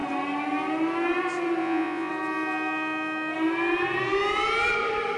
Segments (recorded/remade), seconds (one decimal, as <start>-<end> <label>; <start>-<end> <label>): 0.0-1.6 recorded; 1.6-2.1 remade; 2.1-5.2 recorded